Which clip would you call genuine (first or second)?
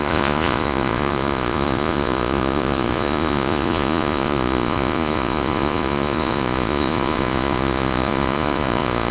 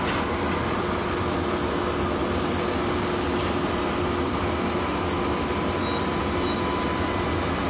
second